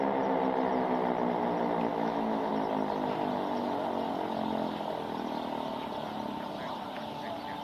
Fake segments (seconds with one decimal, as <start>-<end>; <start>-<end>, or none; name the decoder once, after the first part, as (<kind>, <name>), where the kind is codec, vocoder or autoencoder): 1.9-2.5 (autoencoder, DAC-VAE)

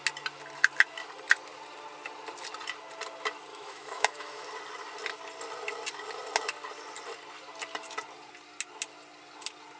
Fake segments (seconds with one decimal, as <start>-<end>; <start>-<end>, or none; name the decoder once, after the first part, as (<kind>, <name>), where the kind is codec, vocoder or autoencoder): 3.5-4.5 (autoencoder, DAC-VAE)

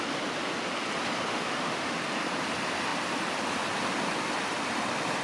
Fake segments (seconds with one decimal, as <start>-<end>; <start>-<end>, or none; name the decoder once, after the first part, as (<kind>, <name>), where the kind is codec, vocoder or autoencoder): 1.3-2.0 (autoencoder, DAC-VAE)